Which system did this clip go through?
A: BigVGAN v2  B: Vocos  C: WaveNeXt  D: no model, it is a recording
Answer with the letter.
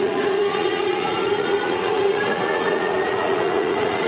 B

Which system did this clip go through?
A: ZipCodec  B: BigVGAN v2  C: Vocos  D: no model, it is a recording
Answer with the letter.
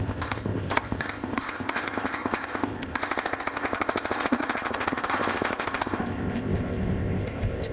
A